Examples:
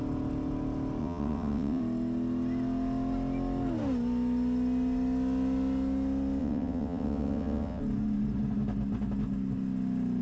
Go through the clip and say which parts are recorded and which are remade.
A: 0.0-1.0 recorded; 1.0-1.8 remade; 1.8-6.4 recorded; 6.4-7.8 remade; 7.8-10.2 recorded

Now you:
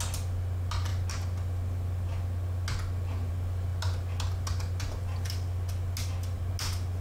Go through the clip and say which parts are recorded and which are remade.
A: 0.0-7.0 recorded

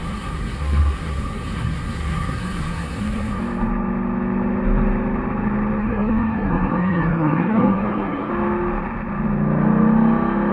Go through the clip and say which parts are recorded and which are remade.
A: 0.0-3.4 remade; 3.4-5.8 recorded; 5.8-8.3 remade; 8.3-10.5 recorded

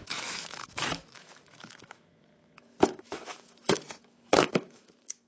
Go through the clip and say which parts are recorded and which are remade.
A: 0.0-5.3 remade